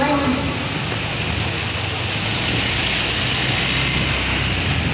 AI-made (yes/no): no